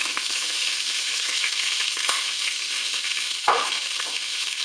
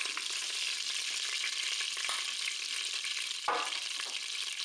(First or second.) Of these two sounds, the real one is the second